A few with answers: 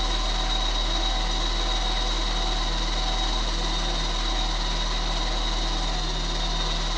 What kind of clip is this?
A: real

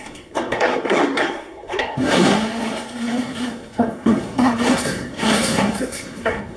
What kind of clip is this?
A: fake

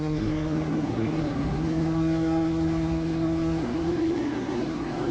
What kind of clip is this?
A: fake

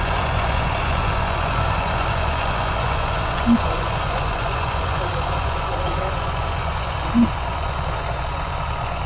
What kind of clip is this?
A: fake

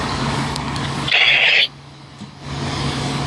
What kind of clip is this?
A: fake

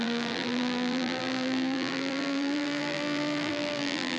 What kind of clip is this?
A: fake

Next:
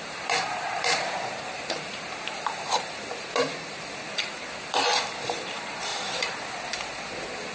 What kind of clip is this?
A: fake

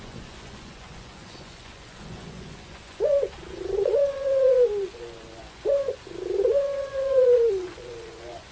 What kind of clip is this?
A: fake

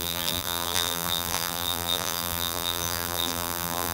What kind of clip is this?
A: fake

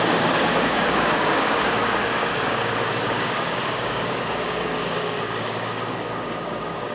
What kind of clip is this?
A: fake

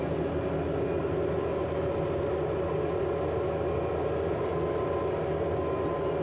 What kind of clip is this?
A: real